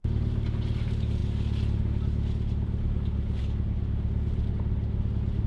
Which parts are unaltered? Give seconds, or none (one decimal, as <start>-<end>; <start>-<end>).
0.0-5.5